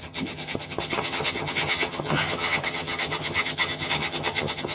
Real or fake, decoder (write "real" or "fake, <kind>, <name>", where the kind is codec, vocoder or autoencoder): fake, vocoder, HiFi-GAN